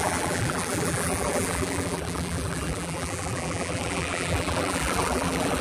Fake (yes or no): yes